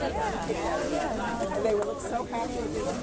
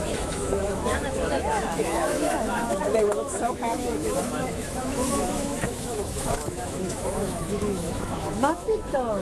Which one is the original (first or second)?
first